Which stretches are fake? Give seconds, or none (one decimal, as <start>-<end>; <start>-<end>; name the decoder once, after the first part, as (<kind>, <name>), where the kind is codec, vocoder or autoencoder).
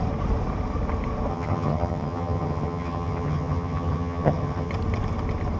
1.3-4.7 (vocoder, HiFi-GAN)